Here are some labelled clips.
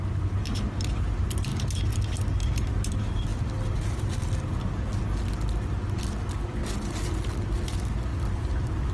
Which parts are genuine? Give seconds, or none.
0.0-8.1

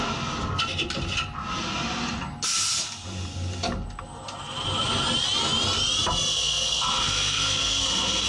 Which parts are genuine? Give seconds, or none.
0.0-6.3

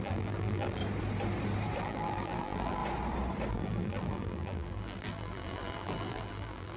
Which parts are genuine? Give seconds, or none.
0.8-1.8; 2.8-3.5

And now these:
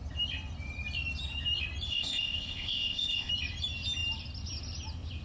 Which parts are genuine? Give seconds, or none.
0.0-1.9; 3.3-5.2

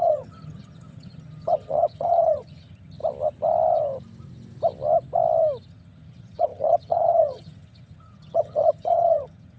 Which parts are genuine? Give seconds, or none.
3.0-5.7

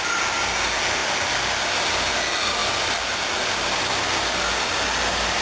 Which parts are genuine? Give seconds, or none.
0.0-5.4

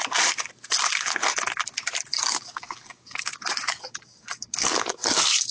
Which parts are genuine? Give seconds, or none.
0.0-2.1